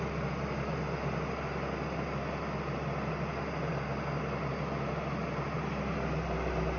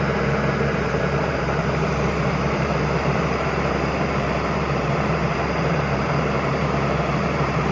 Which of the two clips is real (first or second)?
first